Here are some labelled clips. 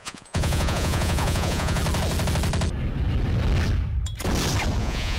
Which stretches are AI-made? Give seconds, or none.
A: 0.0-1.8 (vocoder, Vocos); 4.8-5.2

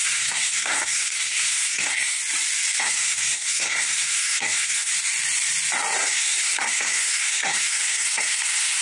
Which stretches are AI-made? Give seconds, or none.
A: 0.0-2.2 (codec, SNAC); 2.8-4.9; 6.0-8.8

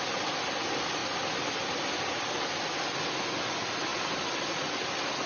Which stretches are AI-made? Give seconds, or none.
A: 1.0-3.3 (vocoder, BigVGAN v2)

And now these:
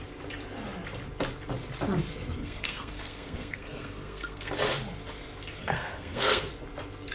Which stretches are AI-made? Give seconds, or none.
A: 2.4-4.5 (codec, SNAC); 5.6-6.5